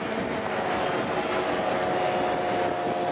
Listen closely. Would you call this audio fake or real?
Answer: real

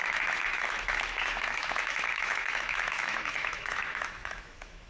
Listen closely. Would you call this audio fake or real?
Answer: fake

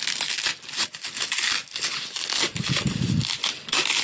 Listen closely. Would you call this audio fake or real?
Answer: real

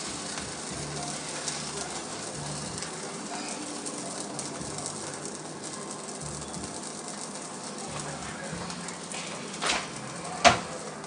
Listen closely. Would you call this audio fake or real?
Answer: real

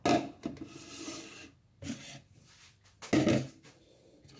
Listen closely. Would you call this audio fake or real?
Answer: real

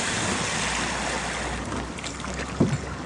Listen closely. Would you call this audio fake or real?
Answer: real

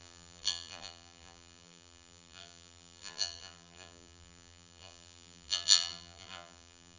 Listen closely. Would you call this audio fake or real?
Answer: fake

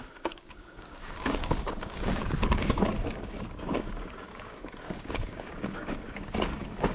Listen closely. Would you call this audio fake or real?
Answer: fake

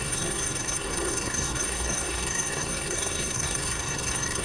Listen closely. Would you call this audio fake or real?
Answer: fake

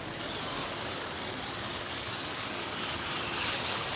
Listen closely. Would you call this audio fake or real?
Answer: fake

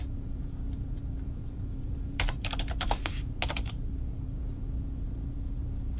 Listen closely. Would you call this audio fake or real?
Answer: fake